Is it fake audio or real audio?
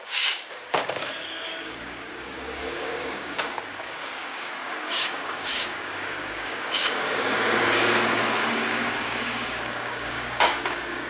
fake